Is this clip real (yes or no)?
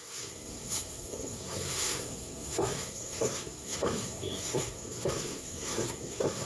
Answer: no